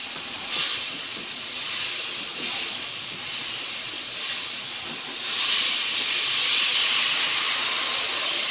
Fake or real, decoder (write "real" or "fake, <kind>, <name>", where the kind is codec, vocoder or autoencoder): fake, vocoder, Vocos